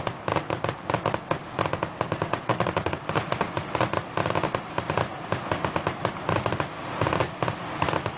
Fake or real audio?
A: real